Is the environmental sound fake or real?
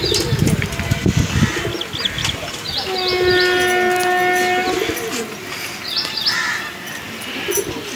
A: real